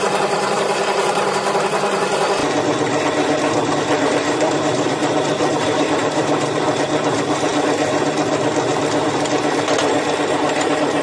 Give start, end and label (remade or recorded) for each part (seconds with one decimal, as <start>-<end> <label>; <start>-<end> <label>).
0.0-2.4 remade; 2.4-3.7 recorded; 3.7-7.5 remade; 7.5-10.3 recorded; 10.3-11.0 remade